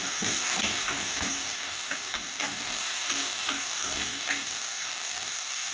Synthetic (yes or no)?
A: yes